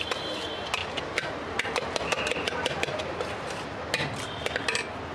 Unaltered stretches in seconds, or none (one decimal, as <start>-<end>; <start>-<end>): 0.0-5.1